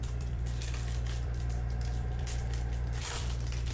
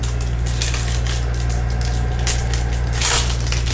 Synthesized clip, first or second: first